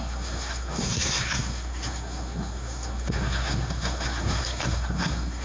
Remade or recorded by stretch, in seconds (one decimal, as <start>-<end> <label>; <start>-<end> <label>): 0.0-5.4 remade